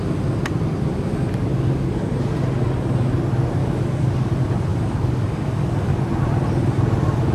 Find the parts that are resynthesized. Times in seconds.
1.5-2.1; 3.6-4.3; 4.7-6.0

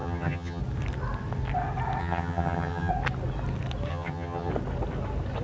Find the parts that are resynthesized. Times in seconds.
0.0-0.6; 2.0-2.9; 3.9-4.5

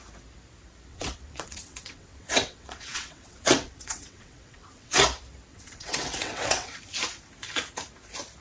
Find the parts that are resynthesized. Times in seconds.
0.9-4.9; 5.5-6.8

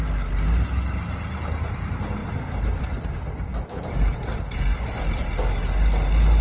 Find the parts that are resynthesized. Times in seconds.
2.2-2.8; 3.5-4.2

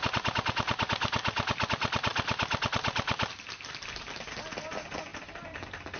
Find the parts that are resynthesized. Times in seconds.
none